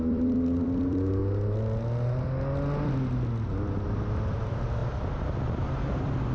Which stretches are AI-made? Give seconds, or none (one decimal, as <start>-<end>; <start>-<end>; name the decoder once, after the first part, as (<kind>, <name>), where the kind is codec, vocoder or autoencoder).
0.0-1.2 (vocoder, BigVGAN v2); 3.9-6.3